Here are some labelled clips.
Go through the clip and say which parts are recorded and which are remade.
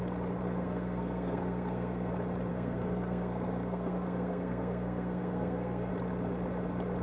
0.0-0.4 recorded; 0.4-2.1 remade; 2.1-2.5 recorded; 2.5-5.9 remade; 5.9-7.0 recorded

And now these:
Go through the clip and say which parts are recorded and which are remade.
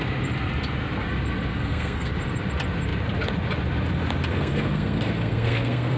0.0-1.5 recorded; 1.5-2.1 remade; 2.1-4.3 recorded; 4.3-6.0 remade